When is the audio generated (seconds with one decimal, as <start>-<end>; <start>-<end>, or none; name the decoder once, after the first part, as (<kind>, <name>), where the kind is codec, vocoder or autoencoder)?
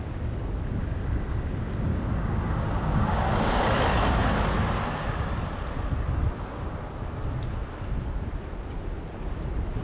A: 1.9-3.6 (codec, DAC)